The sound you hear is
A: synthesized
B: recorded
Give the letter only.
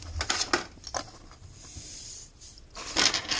B